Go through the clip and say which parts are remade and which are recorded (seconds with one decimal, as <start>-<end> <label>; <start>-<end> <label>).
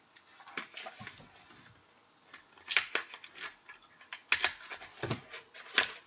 0.0-6.1 recorded